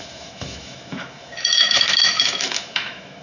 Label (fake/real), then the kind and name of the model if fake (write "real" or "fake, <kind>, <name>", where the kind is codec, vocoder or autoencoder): fake, autoencoder, DAC-VAE